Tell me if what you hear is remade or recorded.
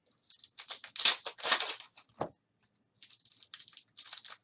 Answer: recorded